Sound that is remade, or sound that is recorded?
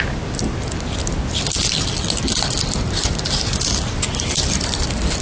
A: recorded